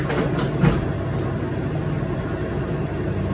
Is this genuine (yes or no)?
yes